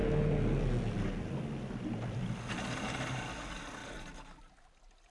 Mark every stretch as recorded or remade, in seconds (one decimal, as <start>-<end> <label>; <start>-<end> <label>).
0.0-5.1 recorded

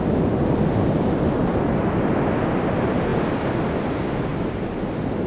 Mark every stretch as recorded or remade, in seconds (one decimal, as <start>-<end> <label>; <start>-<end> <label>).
0.0-5.3 recorded

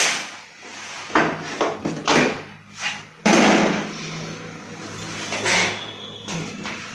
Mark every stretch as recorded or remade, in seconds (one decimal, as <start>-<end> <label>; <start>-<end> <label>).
0.0-6.9 recorded